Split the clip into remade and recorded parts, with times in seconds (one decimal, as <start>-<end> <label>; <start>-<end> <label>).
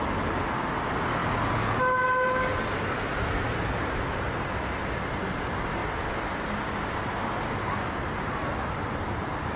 0.0-9.6 recorded